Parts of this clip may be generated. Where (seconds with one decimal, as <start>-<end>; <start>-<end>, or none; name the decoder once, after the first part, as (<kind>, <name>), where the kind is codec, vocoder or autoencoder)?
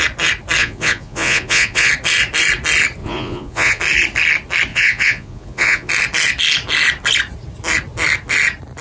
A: 0.6-1.9 (vocoder, Vocos); 3.0-3.8; 4.7-5.9